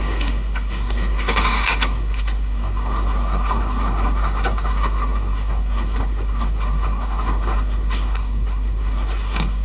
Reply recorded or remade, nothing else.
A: remade